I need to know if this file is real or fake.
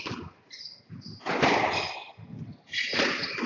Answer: real